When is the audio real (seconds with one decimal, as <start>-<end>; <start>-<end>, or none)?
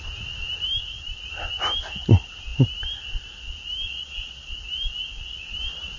0.0-3.9; 4.5-6.0